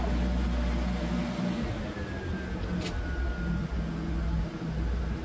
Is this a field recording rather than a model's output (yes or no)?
yes